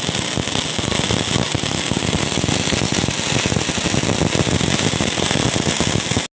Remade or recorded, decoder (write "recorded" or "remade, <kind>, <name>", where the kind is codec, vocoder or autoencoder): recorded